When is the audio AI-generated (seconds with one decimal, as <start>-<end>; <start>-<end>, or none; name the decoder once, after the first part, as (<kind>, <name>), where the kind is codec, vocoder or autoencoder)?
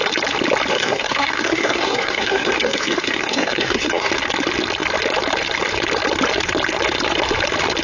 0.7-4.1 (codec, SNAC)